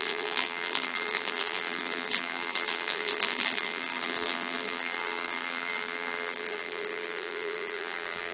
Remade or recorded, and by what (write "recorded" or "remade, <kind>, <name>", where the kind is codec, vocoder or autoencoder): remade, vocoder, BigVGAN v2